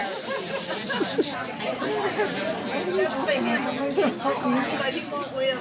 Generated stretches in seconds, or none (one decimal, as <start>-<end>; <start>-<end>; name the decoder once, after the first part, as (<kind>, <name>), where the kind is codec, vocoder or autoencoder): 0.0-3.4 (vocoder, BigVGAN v2)